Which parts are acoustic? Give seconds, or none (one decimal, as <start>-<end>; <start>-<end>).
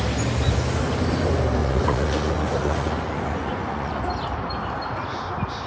0.0-1.6; 4.0-5.7